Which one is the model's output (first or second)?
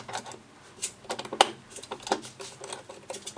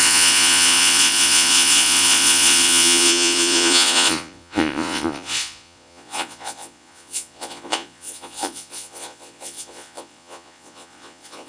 second